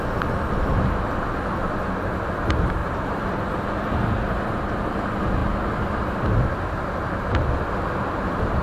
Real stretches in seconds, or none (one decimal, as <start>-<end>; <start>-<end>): 0.0-2.8; 4.4-8.6